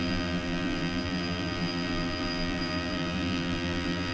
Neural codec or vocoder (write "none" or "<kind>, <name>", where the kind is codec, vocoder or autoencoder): vocoder, BigVGAN v2